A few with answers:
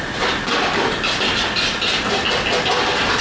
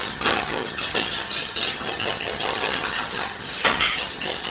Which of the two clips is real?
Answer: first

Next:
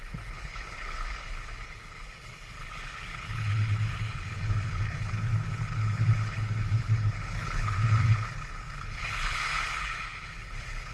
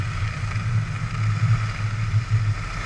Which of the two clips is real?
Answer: second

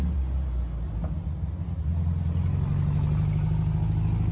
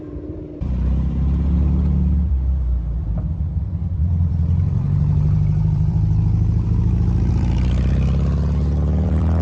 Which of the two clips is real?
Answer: first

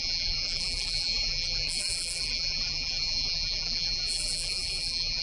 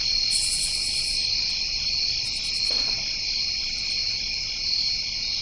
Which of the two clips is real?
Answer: second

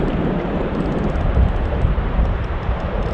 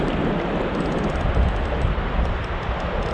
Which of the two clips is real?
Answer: second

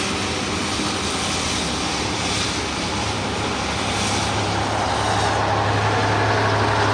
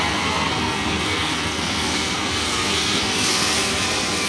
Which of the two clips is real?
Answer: first